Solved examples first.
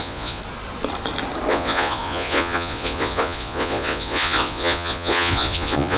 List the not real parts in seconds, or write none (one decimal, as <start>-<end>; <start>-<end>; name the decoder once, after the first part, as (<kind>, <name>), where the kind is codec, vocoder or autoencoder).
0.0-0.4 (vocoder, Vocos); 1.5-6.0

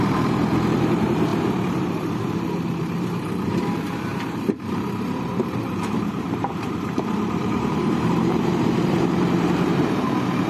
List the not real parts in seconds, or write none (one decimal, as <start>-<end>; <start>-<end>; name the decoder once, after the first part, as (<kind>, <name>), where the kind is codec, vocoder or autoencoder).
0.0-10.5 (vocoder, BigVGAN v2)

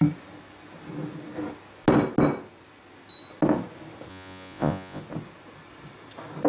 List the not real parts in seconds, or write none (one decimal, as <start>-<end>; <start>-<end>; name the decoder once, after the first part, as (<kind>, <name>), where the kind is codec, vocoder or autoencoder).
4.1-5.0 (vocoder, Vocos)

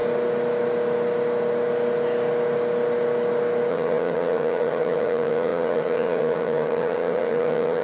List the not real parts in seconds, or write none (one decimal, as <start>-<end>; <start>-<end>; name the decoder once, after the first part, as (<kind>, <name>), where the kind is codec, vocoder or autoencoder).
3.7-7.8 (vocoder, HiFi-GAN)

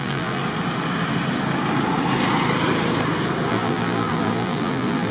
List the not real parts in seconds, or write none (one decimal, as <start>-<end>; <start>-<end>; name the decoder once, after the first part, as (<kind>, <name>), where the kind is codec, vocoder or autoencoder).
0.0-0.4 (vocoder, BigVGAN v2); 3.5-5.1